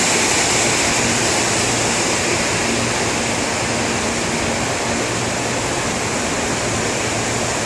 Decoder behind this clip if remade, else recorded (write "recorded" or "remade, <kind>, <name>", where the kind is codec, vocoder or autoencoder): recorded